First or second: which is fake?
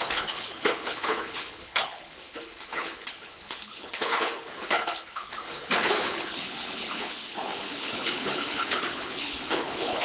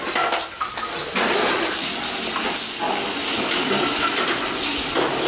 first